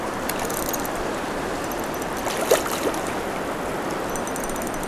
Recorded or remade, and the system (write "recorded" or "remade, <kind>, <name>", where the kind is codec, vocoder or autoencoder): recorded